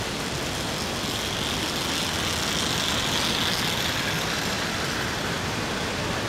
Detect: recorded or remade recorded